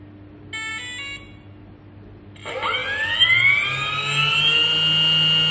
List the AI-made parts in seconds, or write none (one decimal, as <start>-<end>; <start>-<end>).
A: none